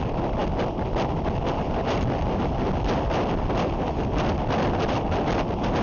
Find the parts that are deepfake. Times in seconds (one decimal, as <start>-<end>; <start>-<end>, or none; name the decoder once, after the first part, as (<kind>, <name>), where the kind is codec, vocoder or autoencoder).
none